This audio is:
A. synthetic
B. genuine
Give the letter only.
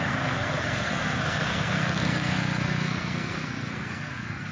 A